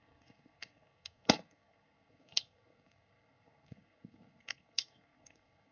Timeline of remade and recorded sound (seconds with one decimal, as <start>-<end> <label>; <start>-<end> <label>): 0.0-5.7 remade